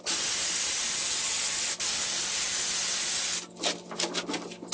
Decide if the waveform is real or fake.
real